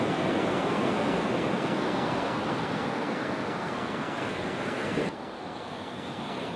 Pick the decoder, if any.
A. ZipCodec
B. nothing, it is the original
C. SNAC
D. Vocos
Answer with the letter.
C